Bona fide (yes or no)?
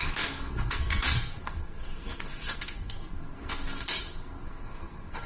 no